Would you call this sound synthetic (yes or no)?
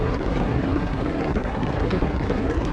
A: yes